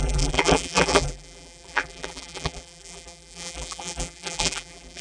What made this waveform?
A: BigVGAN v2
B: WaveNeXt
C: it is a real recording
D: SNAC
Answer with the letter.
A